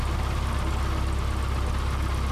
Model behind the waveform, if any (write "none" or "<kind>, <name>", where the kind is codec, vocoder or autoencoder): none